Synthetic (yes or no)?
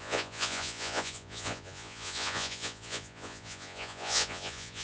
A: yes